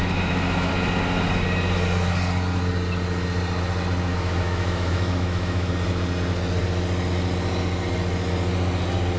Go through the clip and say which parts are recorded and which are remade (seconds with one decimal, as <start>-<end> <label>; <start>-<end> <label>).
0.0-0.7 remade; 0.7-4.1 recorded; 4.1-5.7 remade; 5.7-9.2 recorded